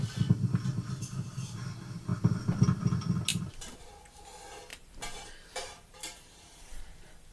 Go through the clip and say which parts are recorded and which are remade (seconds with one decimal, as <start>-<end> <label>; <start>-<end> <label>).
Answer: 0.0-3.3 recorded; 3.3-3.9 remade; 3.9-4.7 recorded; 4.7-7.3 remade